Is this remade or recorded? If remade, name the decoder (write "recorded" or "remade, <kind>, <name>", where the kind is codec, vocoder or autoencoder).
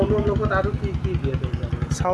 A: recorded